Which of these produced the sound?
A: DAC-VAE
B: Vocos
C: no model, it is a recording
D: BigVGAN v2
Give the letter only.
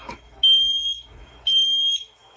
A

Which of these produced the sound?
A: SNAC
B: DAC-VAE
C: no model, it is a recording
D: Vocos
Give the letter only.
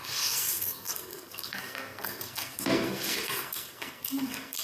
A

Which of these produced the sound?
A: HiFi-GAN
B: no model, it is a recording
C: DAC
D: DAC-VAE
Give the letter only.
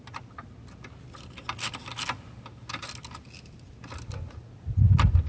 B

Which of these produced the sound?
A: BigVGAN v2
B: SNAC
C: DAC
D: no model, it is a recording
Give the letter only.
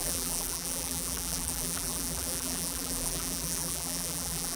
A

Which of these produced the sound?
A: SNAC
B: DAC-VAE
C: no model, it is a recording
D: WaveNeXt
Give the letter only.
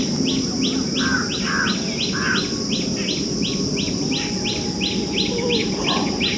C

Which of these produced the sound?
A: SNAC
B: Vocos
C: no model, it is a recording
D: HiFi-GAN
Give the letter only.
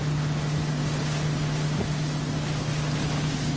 C